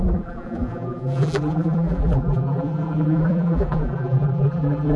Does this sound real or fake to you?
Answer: fake